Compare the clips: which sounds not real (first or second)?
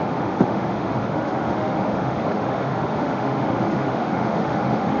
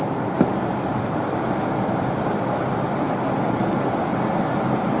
first